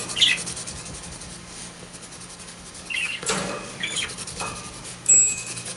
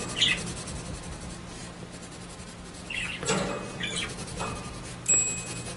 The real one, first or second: second